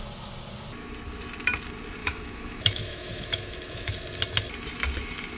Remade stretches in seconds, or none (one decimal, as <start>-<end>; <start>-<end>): 2.0-3.9